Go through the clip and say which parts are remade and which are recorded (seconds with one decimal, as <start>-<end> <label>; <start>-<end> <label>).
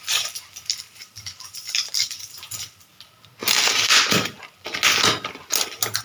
0.0-2.9 remade; 2.9-6.0 recorded